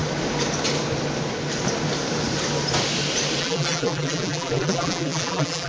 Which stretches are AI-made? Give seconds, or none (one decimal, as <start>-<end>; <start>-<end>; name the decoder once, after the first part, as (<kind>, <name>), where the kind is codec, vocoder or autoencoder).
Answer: 3.4-5.7 (vocoder, BigVGAN v2)